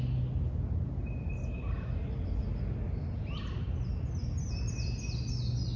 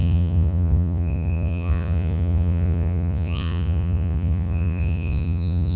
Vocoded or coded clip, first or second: second